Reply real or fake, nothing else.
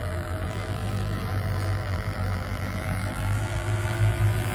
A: fake